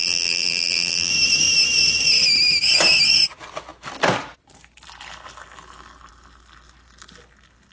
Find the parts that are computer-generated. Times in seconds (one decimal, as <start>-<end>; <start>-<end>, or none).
0.0-1.1